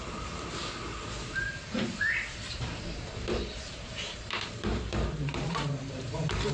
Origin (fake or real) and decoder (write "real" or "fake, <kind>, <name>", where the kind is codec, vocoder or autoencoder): fake, vocoder, BigVGAN v2